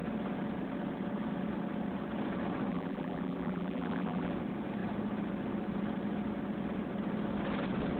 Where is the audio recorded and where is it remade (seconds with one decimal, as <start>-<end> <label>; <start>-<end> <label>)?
0.0-2.7 recorded; 2.7-4.3 remade; 4.3-8.0 recorded